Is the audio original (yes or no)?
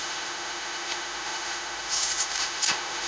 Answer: no